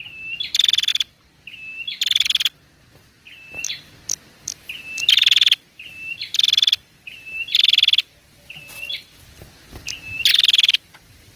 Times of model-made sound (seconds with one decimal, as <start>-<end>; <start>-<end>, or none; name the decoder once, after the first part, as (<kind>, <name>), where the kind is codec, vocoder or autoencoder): none